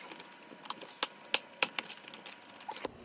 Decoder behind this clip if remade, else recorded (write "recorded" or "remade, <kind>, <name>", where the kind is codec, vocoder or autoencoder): recorded